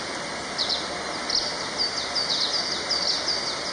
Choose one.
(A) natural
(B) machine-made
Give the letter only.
A